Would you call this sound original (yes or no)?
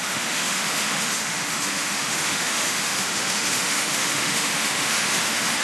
no